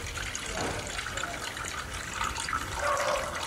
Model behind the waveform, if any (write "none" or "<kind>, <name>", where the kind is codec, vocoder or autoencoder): none